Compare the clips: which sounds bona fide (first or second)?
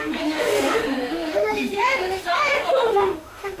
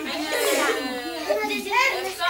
second